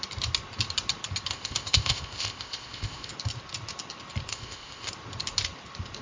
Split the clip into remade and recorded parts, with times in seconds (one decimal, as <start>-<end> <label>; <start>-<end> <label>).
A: 0.0-1.3 recorded; 1.3-3.1 remade; 3.1-4.3 recorded; 4.3-4.9 remade; 4.9-6.0 recorded